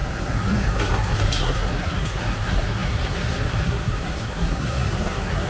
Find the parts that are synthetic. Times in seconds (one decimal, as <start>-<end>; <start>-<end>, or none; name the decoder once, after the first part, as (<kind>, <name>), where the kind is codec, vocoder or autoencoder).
0.0-5.5 (codec, SNAC)